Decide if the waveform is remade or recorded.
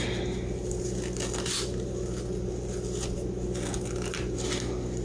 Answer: recorded